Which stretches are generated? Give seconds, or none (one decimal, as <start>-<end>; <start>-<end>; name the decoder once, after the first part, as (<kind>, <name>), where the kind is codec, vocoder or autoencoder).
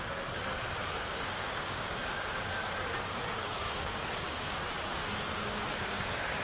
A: 0.8-2.5 (codec, DAC); 3.3-4.5; 5.0-6.4